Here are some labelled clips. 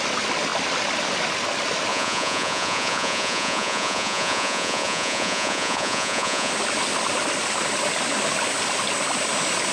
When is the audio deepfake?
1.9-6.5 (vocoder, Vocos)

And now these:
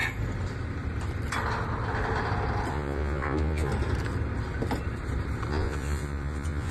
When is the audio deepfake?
2.7-3.7 (vocoder, Vocos); 5.5-6.7

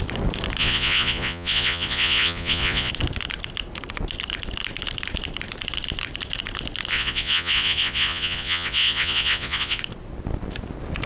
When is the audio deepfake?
0.6-2.9 (vocoder, Vocos); 6.9-9.8